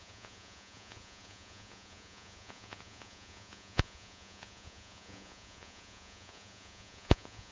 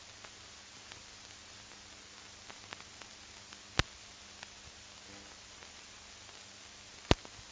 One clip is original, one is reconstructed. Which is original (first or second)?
second